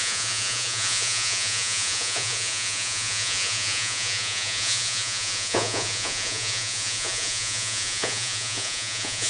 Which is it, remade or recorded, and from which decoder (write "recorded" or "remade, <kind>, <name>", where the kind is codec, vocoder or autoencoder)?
remade, vocoder, Vocos